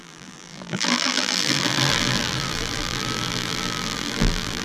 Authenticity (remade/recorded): remade